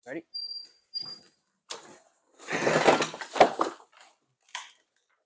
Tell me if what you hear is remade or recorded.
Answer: recorded